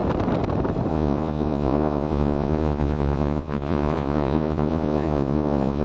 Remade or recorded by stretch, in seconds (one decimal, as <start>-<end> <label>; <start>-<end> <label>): 0.0-0.9 recorded; 0.9-5.8 remade